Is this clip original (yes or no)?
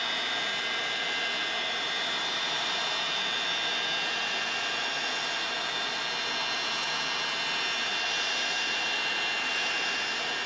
yes